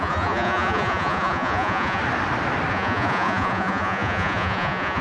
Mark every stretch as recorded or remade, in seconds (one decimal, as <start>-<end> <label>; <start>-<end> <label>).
0.0-2.0 remade; 2.0-2.7 recorded; 2.7-5.0 remade